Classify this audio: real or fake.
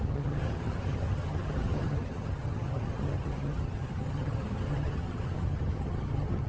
fake